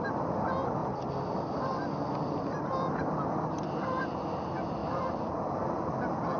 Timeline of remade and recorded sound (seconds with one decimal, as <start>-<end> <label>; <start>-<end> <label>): 0.0-0.8 recorded; 0.8-3.0 remade; 3.0-4.8 recorded; 4.8-5.7 remade; 5.7-6.4 recorded